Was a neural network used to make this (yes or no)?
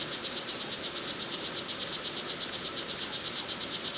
no